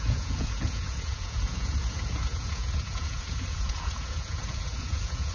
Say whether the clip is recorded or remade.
remade